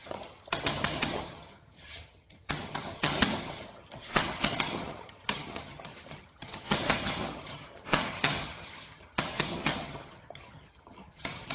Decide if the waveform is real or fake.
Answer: fake